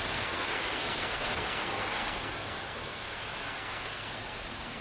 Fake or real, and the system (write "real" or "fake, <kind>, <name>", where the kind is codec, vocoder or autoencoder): fake, codec, SNAC